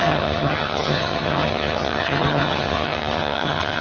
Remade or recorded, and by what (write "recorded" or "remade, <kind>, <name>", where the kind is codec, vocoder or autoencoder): remade, vocoder, HiFi-GAN